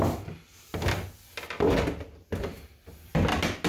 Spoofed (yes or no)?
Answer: no